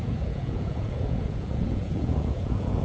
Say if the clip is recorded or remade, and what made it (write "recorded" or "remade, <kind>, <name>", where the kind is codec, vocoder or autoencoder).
remade, vocoder, Vocos